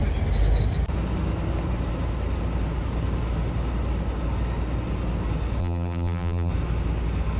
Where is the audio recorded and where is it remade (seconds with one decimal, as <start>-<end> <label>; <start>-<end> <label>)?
0.0-5.6 recorded; 5.6-6.5 remade; 6.5-7.4 recorded